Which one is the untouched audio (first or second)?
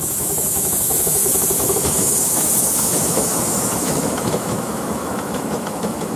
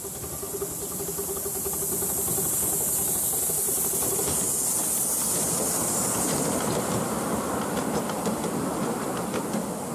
second